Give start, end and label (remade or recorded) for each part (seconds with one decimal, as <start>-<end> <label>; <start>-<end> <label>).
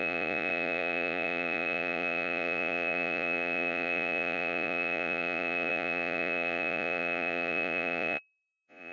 0.0-8.9 remade